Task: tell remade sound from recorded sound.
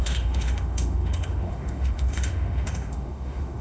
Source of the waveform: remade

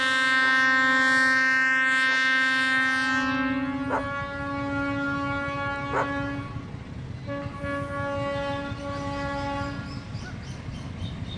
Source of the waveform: recorded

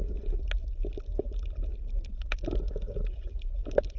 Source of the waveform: recorded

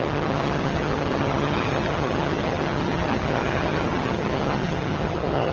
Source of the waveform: remade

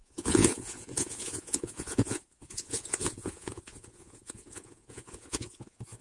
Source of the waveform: remade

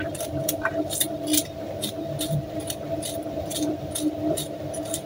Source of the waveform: remade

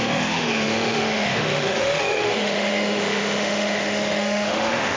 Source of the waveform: remade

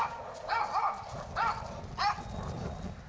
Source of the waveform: recorded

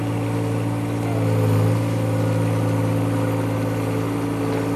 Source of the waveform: recorded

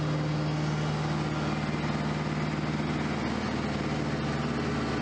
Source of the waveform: recorded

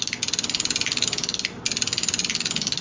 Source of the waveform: recorded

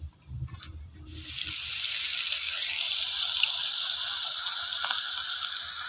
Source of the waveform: recorded